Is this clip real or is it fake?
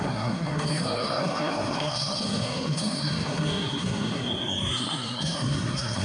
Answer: fake